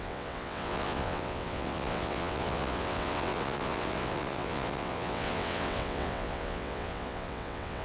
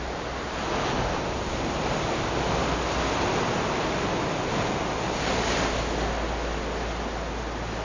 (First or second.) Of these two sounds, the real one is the second